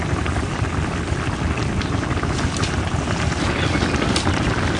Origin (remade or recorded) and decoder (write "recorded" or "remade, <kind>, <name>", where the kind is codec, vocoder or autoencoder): recorded